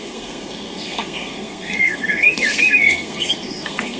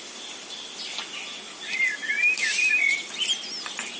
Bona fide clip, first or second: second